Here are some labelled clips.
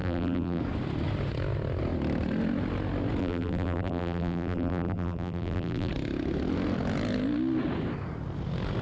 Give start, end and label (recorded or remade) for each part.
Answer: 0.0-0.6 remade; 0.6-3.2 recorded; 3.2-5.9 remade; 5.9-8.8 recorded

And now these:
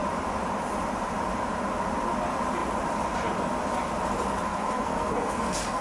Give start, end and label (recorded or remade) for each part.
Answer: 0.0-4.5 recorded; 4.5-5.8 remade

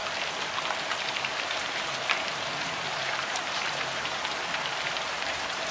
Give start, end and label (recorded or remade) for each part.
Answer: 0.0-1.2 recorded; 1.2-5.7 remade